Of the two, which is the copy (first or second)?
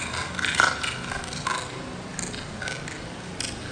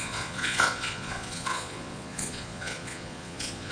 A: second